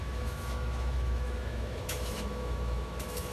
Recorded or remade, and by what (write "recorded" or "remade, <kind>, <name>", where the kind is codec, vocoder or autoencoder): remade, autoencoder, DAC-VAE